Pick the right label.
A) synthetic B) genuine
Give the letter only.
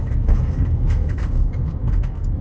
A